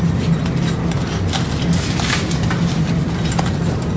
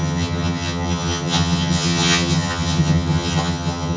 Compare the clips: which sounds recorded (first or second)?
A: first